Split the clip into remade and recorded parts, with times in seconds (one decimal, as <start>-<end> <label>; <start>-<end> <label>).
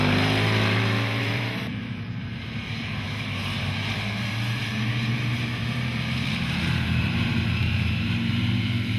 0.0-9.0 remade